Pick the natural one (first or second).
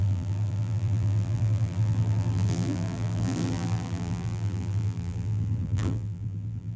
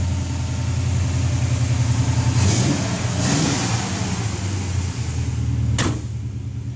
second